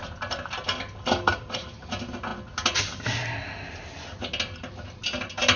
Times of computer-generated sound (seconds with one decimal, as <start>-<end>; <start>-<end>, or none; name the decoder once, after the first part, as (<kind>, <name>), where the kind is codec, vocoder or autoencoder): 1.3-1.9 (vocoder, BigVGAN v2)